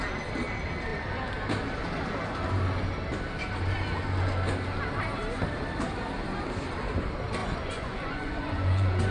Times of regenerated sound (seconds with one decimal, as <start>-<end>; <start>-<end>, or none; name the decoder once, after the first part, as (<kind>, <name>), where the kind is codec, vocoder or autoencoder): 7.4-9.1 (vocoder, Vocos)